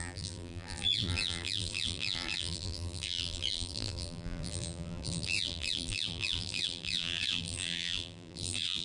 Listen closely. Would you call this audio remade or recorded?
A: remade